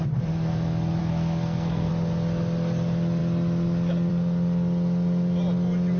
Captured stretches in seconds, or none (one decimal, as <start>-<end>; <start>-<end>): 0.0-1.0; 1.9-6.0